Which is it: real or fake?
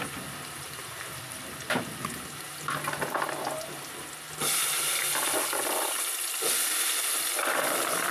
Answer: real